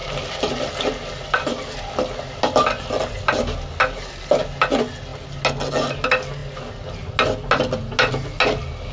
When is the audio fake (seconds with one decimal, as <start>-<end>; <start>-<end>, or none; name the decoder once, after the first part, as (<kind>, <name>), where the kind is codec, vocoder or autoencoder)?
none

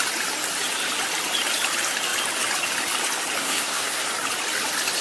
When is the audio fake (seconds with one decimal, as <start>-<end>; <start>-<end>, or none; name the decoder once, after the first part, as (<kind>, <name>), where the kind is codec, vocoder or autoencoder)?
3.4-4.1 (codec, SNAC)

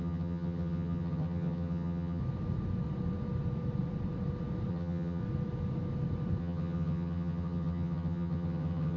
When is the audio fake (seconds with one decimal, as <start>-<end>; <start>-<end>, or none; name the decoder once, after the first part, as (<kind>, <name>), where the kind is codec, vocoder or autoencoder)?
0.0-2.2 (vocoder, HiFi-GAN); 4.7-5.2; 6.4-9.0

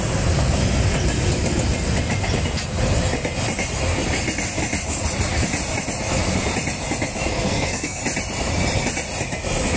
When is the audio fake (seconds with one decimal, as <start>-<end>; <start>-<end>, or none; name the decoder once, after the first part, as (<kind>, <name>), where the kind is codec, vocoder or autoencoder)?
7.3-8.0 (codec, SNAC)

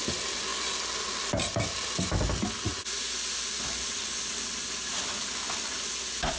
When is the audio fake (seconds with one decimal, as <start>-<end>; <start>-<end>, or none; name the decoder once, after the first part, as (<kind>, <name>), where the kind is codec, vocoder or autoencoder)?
none